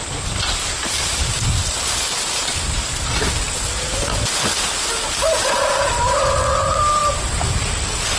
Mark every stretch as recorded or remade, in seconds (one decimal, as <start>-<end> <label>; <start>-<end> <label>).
0.0-5.4 remade; 5.4-6.6 recorded; 6.6-7.0 remade; 7.0-8.2 recorded